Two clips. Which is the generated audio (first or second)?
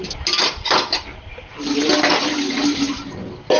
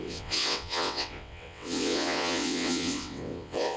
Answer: second